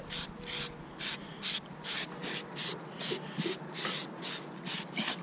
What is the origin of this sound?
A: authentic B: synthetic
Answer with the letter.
A